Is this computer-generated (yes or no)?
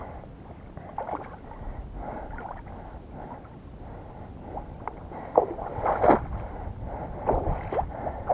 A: no